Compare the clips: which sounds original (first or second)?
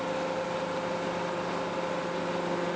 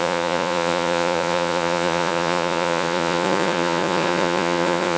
first